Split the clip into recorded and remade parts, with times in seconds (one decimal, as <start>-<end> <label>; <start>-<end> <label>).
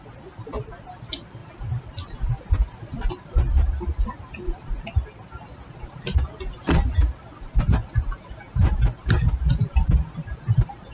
0.0-10.9 recorded